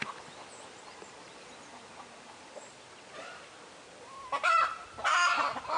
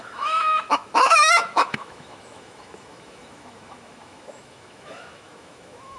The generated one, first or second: second